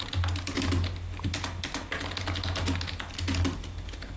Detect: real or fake real